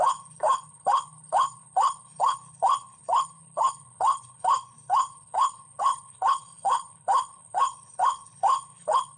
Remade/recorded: remade